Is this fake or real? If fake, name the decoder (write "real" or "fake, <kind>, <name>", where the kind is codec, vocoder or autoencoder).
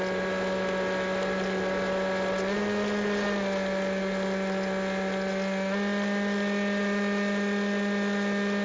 real